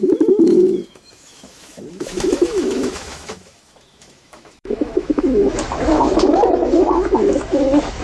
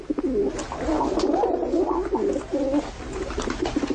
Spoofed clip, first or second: first